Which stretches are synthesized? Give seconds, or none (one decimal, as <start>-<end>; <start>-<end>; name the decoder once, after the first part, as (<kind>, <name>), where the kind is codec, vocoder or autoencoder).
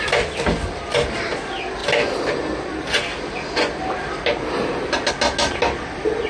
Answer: none